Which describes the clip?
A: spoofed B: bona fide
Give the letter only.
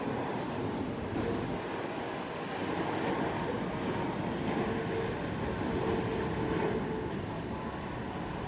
B